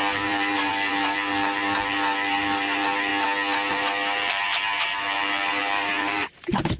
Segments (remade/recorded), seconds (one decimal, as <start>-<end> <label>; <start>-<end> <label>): 0.0-3.1 remade; 3.1-3.7 recorded; 3.7-6.8 remade